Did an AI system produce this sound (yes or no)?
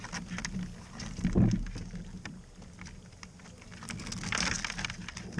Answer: no